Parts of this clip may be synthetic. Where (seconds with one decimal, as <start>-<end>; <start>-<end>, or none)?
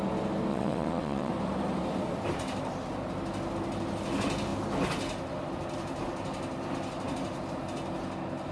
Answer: 0.5-1.3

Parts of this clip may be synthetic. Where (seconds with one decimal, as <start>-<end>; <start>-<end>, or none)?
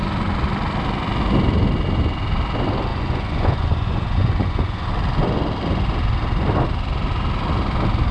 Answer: 2.9-4.9